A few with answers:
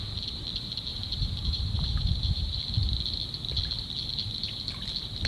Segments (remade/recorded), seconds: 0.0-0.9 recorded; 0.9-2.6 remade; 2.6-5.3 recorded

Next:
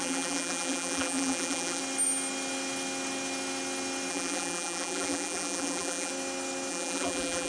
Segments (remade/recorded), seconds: 0.0-1.8 remade; 1.8-4.1 recorded; 4.1-6.1 remade; 6.1-6.7 recorded; 6.7-7.5 remade